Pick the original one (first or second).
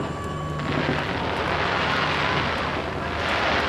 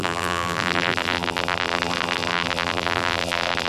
first